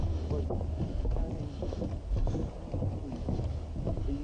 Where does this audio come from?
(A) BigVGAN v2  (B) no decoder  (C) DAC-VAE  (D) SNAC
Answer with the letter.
B